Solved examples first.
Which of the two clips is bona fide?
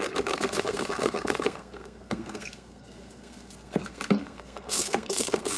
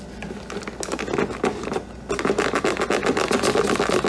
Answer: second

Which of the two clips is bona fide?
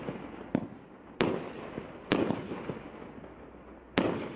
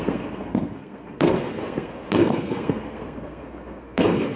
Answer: first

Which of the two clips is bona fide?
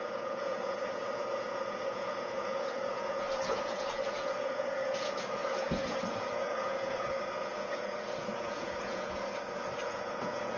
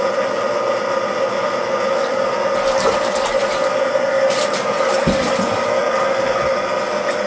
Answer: second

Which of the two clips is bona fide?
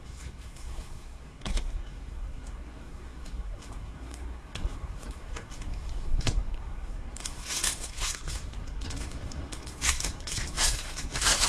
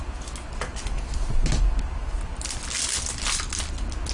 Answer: second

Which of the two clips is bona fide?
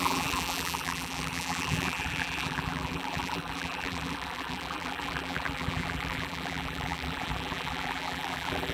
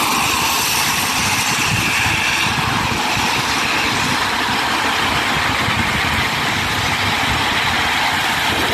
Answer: second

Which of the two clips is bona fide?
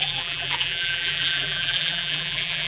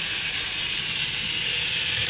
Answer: second